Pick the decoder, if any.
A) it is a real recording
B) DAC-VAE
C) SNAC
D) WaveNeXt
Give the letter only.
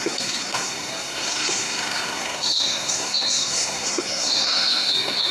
C